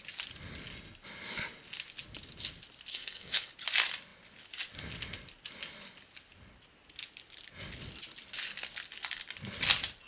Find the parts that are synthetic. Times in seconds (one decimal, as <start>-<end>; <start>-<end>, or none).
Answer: 2.9-3.5